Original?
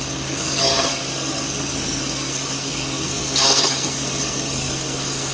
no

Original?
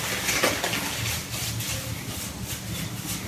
yes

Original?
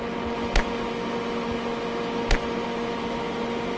yes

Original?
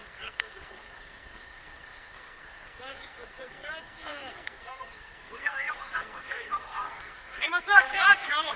no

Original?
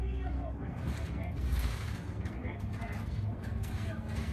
no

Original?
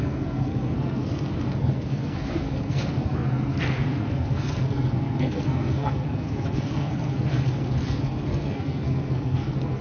no